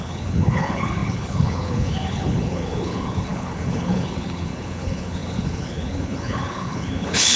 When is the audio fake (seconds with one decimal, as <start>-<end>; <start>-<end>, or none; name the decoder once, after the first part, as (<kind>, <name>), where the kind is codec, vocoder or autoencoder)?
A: 0.0-7.4 (codec, HILCodec)